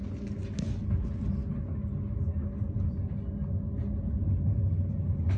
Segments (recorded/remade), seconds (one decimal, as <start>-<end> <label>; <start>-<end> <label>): 0.0-5.4 recorded